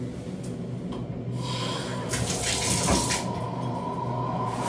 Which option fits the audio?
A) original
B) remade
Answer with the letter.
A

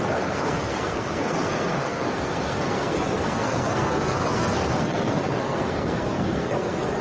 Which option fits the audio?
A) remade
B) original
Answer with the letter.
A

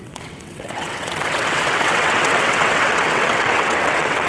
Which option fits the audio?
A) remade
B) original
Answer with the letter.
A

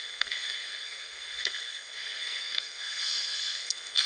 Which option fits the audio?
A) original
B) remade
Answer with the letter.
B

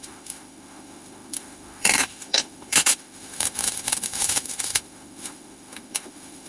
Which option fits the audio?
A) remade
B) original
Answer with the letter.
A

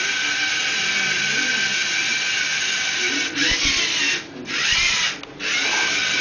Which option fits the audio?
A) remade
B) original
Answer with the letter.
B